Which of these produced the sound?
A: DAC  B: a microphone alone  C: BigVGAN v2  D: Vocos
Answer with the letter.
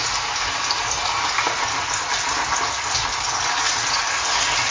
B